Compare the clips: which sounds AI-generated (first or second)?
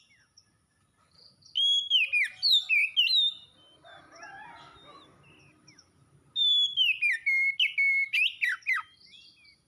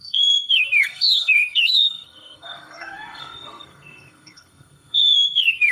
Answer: second